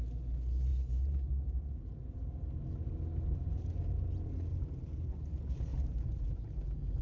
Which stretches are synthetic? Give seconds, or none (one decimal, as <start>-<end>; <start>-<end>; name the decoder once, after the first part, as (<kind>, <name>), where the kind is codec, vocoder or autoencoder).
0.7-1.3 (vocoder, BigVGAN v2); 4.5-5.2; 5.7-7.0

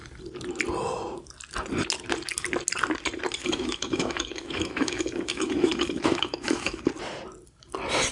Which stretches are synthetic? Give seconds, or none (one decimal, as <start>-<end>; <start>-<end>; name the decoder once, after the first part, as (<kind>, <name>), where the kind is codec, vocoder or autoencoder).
3.4-6.8 (autoencoder, DAC-VAE)

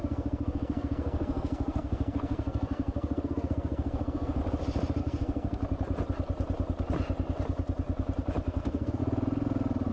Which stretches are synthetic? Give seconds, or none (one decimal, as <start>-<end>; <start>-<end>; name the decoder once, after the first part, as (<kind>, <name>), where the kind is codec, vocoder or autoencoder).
0.0-4.4 (codec, SNAC); 5.0-5.6; 8.5-9.0

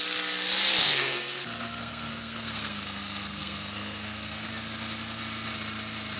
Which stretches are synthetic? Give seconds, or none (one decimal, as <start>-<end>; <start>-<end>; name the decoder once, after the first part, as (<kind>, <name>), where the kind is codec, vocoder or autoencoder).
0.8-4.5 (codec, SNAC)

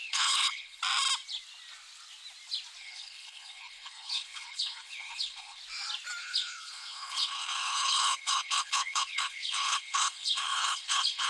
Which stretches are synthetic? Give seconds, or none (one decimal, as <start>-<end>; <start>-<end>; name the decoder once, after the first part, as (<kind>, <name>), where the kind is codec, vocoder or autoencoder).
0.0-0.8 (codec, HILCodec); 2.8-5.6; 6.2-11.3

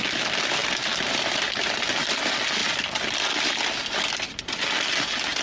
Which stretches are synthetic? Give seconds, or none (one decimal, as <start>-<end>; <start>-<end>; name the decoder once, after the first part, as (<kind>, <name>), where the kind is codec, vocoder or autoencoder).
none